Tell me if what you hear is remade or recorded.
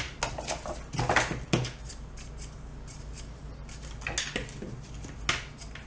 recorded